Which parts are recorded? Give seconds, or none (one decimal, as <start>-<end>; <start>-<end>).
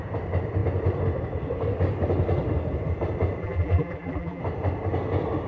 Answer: 0.0-3.4; 4.4-5.5